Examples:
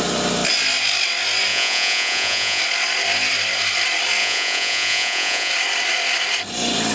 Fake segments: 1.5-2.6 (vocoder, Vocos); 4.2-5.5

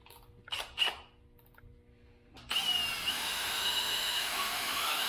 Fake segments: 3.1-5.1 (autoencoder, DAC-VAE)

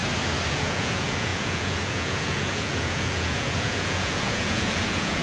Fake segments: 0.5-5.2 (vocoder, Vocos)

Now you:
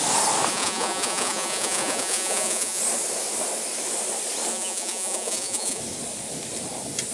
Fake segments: 0.5-2.8 (vocoder, Vocos); 4.5-5.8

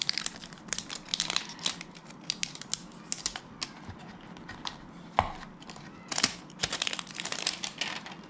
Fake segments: none